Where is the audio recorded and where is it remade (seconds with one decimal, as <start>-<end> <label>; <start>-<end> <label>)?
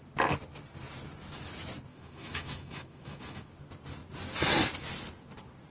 0.0-1.9 recorded; 1.9-3.5 remade; 3.5-5.7 recorded